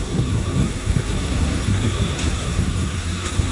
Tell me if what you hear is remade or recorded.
remade